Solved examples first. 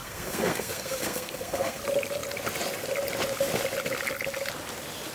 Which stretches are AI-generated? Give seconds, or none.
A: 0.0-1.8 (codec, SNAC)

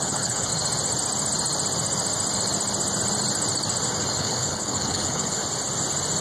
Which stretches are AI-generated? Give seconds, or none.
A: 0.0-0.5 (codec, HILCodec); 4.2-5.4